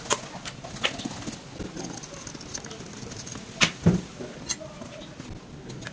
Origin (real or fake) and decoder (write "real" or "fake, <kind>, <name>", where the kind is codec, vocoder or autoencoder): real